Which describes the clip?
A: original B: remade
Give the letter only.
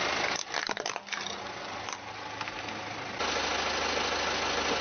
A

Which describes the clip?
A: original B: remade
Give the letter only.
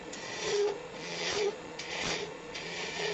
B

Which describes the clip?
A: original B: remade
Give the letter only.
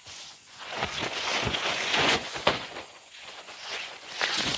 B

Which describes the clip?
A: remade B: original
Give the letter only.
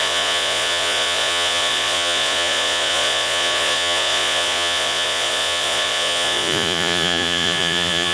A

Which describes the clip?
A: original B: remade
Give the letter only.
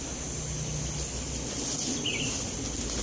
A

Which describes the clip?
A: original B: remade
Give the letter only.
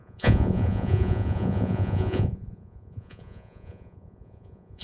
B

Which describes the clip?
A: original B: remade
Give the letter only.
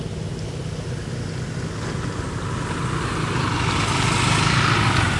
A